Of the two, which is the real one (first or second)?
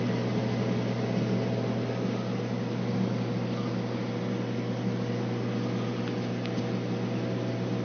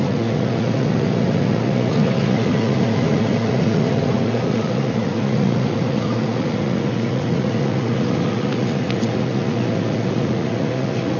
first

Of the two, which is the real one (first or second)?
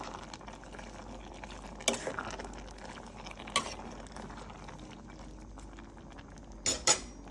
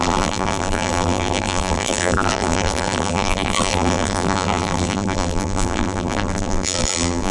first